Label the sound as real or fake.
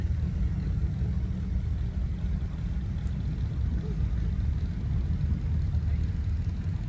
real